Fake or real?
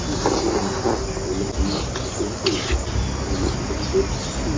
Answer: real